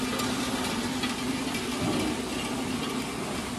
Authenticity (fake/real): real